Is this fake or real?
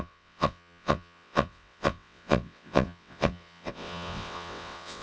fake